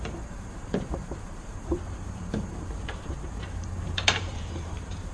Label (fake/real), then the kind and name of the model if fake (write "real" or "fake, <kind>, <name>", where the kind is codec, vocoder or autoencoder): fake, vocoder, BigVGAN v2